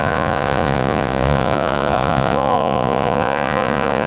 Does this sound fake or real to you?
fake